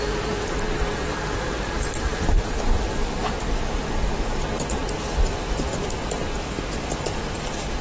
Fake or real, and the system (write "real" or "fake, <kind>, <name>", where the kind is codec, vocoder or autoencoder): fake, vocoder, BigVGAN v2